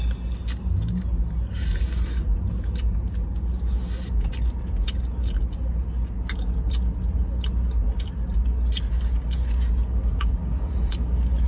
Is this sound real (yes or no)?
yes